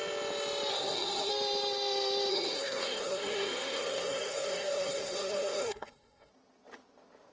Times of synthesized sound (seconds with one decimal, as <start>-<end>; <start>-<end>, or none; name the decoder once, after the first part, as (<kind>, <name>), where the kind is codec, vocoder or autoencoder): 0.7-1.3 (codec, SNAC); 2.3-6.3